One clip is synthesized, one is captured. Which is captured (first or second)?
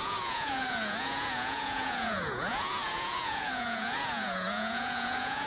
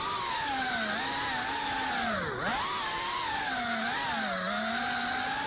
second